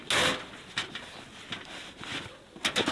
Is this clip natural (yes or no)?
yes